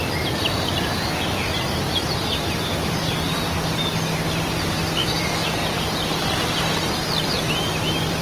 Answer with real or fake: real